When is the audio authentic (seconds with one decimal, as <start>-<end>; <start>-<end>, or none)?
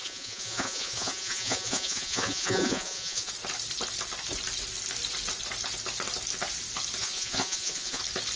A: 3.3-7.0; 8.0-8.4